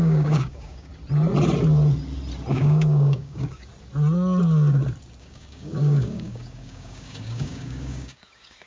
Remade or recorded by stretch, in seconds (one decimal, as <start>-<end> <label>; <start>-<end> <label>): 0.0-0.9 remade; 0.9-2.5 recorded; 2.5-3.7 remade; 3.7-5.2 recorded; 5.2-8.7 remade